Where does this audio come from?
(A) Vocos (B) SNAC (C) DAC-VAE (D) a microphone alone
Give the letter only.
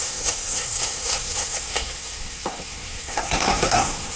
B